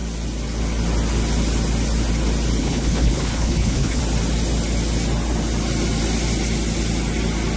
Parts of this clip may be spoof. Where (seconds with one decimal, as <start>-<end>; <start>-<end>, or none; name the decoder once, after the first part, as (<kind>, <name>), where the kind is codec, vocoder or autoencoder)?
2.6-4.0 (codec, HILCodec)